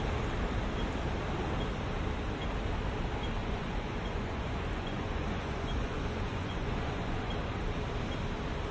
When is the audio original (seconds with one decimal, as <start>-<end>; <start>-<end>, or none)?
0.0-3.4; 7.3-8.7